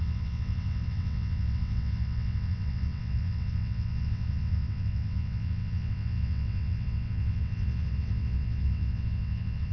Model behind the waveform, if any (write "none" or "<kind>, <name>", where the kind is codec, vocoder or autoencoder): vocoder, WaveNeXt